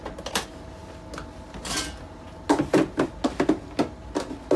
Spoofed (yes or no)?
no